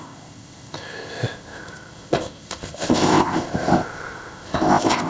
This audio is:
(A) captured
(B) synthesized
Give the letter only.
B